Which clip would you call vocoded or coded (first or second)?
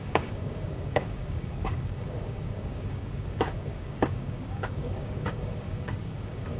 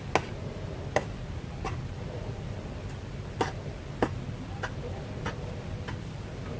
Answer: first